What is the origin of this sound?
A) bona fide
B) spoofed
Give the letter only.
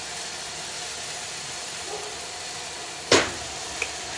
A